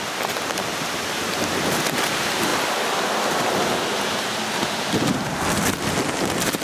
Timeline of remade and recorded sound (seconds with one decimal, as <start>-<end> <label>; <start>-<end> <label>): 0.0-6.6 recorded